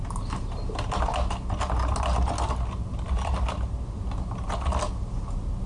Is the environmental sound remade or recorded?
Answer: recorded